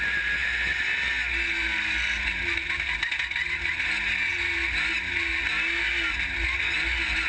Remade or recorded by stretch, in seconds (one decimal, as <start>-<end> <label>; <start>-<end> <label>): 0.0-7.3 recorded